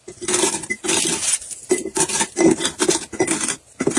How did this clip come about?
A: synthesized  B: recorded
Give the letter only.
B